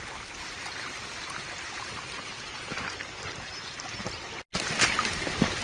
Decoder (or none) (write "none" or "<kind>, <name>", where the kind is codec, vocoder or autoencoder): none